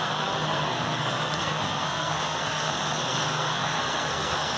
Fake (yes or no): yes